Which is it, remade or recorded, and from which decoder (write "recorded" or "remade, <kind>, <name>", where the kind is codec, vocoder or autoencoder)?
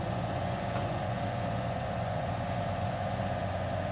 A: remade, vocoder, Vocos